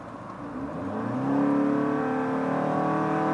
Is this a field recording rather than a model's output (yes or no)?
yes